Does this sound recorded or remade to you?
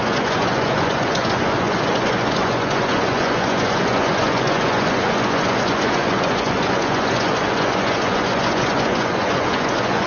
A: remade